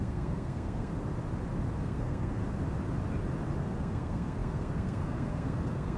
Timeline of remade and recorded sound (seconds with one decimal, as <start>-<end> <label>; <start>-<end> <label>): 0.0-0.9 remade; 0.9-1.8 recorded; 1.8-2.4 remade; 2.4-3.6 recorded; 3.6-6.0 remade